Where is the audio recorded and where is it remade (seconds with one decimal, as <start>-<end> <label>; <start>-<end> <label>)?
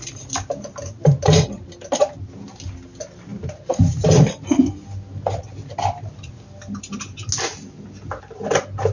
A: 0.0-8.9 recorded